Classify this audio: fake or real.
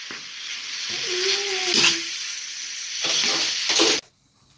real